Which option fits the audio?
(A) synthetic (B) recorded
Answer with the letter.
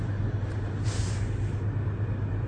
B